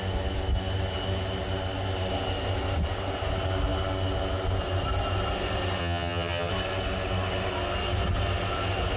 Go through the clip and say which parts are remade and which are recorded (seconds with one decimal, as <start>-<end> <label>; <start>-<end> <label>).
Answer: 0.0-5.8 recorded; 5.8-6.5 remade; 6.5-9.0 recorded